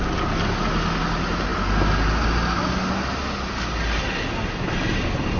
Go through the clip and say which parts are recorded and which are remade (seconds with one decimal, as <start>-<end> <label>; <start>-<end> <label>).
0.0-5.4 recorded